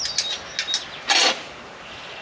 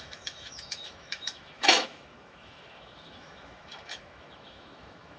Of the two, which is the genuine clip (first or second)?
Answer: first